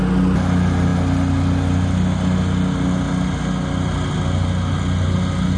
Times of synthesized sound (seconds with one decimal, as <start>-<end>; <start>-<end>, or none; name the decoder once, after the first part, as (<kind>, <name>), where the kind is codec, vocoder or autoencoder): none